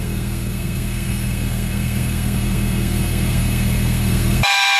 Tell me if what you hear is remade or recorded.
remade